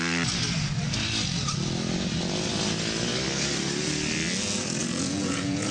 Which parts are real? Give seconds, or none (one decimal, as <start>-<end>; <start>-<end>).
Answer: 0.0-4.8